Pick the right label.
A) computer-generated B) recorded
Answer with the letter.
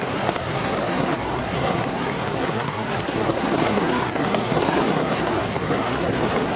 A